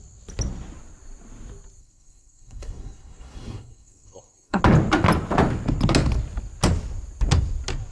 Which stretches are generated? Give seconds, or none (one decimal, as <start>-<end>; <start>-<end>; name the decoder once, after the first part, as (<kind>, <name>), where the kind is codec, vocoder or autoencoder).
1.8-4.6 (codec, SNAC)